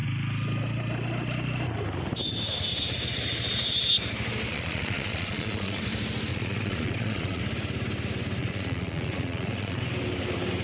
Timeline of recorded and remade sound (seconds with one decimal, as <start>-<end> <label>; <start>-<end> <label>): 0.0-4.5 recorded; 4.5-5.8 remade; 5.8-6.3 recorded; 6.3-7.4 remade; 7.4-8.4 recorded; 8.4-9.8 remade; 9.8-10.6 recorded